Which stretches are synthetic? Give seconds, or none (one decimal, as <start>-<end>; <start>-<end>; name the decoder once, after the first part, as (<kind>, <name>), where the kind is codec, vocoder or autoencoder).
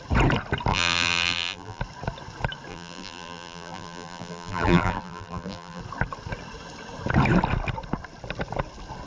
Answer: 0.7-1.8 (vocoder, BigVGAN v2); 2.7-5.8